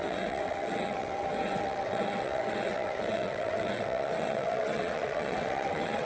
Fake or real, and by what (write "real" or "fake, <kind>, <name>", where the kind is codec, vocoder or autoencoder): fake, vocoder, WaveNeXt